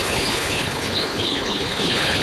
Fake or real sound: fake